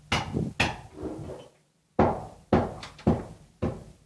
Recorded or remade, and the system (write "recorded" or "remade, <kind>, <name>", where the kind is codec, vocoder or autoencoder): recorded